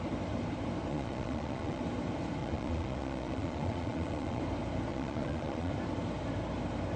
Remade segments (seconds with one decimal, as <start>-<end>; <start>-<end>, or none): 0.9-1.8; 2.4-4.4; 4.9-5.7